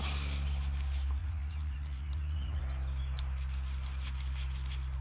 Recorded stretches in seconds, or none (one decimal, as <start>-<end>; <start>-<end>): 0.0-1.2; 2.6-5.0